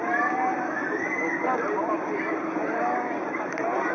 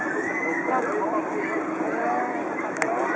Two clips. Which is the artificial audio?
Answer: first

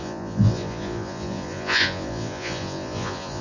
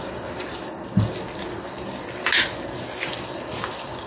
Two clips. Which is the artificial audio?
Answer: first